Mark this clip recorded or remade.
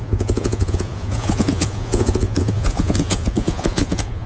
remade